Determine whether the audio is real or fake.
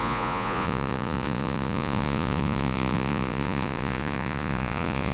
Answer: fake